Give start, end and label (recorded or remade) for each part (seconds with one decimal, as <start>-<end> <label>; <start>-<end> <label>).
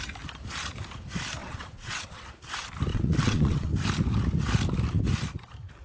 0.0-1.4 recorded; 1.4-2.3 remade; 2.3-2.9 recorded; 2.9-3.7 remade; 3.7-5.8 recorded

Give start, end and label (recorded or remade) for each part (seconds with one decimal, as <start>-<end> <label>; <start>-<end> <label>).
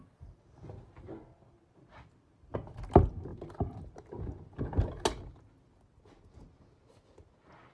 0.0-7.7 recorded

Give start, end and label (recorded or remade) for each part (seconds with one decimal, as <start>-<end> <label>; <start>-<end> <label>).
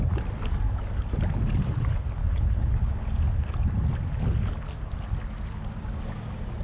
0.0-2.2 recorded; 2.2-2.9 remade; 2.9-6.6 recorded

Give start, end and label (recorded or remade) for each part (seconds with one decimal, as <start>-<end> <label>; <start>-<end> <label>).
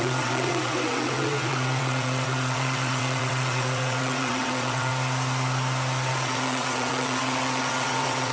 0.0-4.9 remade; 4.9-6.1 recorded; 6.1-8.3 remade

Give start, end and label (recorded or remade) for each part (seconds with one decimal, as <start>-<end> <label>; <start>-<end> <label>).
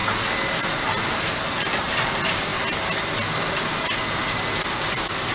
0.0-5.3 recorded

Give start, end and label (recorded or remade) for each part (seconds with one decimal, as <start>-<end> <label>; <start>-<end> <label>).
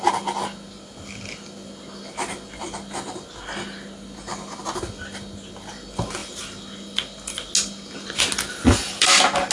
0.0-9.5 recorded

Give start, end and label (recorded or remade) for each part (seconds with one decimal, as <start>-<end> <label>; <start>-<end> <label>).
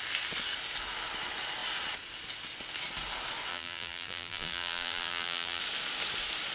0.0-3.5 recorded; 3.5-5.6 remade; 5.6-6.5 recorded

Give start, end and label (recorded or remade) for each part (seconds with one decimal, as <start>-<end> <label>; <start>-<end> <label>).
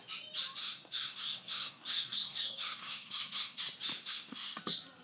0.0-0.6 recorded; 0.6-3.6 remade; 3.6-4.0 recorded; 4.0-4.6 remade; 4.6-5.0 recorded